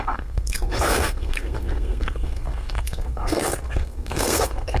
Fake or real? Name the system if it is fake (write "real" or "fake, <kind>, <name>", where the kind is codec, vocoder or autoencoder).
fake, codec, SNAC